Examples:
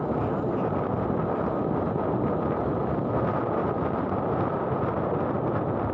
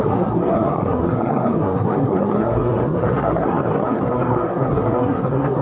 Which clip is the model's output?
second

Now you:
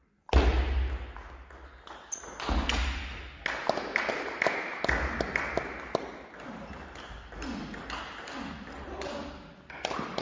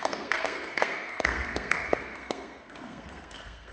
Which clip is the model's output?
second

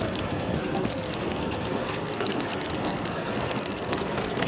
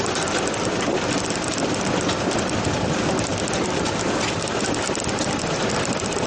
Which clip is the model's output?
first